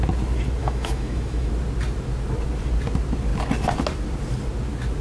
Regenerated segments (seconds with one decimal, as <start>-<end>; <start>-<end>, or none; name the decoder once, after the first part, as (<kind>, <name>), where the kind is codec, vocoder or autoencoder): 0.6-1.5 (autoencoder, DAC-VAE)